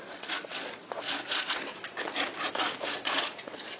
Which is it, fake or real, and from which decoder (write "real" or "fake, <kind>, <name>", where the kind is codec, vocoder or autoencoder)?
fake, vocoder, Vocos